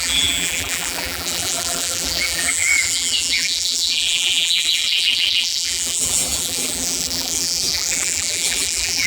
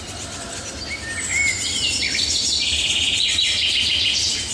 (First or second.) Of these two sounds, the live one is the second